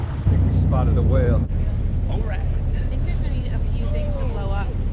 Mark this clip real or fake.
fake